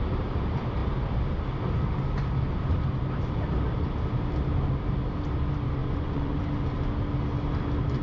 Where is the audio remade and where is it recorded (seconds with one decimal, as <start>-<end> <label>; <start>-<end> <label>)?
0.0-5.8 recorded; 5.8-6.3 remade; 6.3-8.0 recorded